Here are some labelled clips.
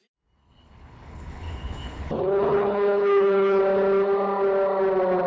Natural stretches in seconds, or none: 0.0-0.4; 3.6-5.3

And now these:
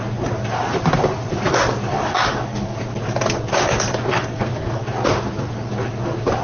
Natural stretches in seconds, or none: 0.0-1.9; 2.8-4.1; 4.8-6.4